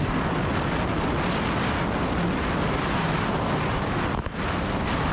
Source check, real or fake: real